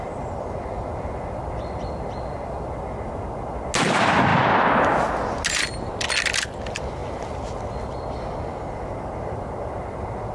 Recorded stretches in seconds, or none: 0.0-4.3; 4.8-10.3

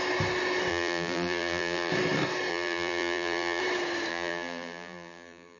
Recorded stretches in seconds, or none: 0.0-0.7; 1.9-2.5; 3.6-4.1

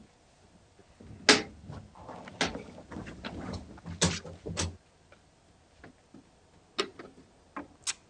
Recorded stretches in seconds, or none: 0.0-6.9; 7.5-8.1

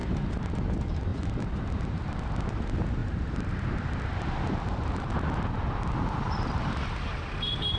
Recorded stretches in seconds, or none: 0.5-1.1; 2.6-3.0; 3.6-4.1; 5.0-7.8

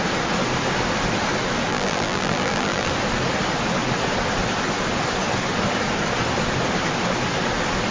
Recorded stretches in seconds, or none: 0.0-1.7; 2.9-7.9